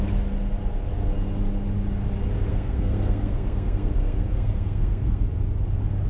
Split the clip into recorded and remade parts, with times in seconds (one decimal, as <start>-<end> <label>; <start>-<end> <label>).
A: 0.0-2.5 recorded; 2.5-5.2 remade; 5.2-6.1 recorded